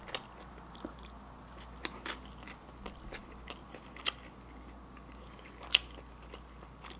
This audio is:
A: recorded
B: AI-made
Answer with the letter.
A